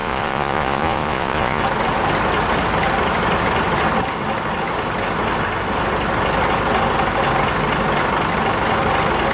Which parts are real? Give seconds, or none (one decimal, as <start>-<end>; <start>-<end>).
1.6-9.3